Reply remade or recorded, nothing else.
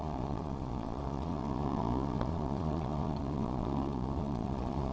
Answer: remade